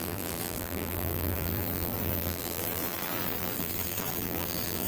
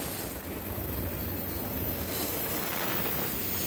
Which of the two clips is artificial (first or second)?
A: first